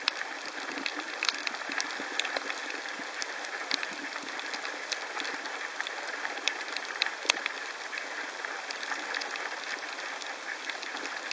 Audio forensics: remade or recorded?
recorded